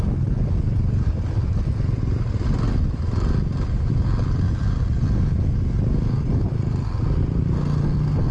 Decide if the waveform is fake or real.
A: real